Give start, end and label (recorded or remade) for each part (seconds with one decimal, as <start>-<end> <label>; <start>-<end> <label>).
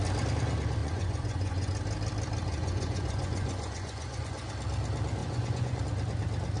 0.0-0.8 recorded; 0.8-1.7 remade; 1.7-2.5 recorded; 2.5-4.5 remade; 4.5-5.2 recorded; 5.2-5.8 remade; 5.8-6.6 recorded